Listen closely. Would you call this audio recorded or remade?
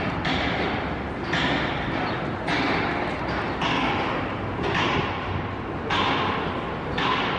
recorded